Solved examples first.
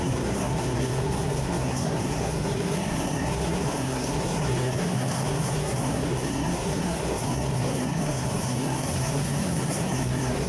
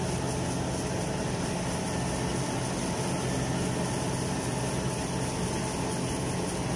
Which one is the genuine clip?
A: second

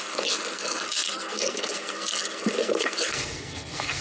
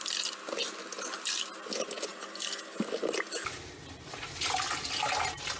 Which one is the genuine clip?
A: second